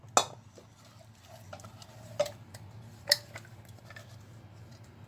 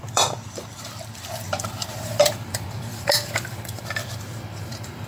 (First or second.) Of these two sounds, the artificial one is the second